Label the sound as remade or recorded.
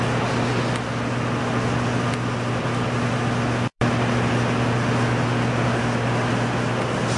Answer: recorded